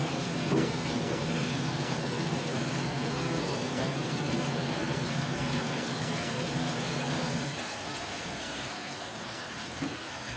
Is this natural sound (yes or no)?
no